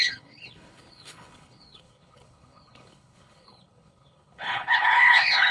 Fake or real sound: fake